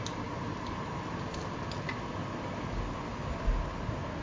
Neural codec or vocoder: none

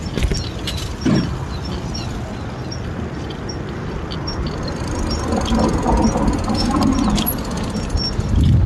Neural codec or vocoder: none